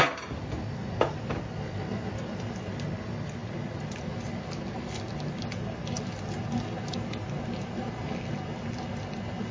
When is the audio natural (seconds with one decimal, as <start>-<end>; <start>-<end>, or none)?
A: 0.0-9.5